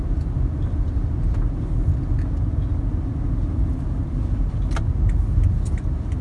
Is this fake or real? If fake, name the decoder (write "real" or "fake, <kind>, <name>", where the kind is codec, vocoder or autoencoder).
real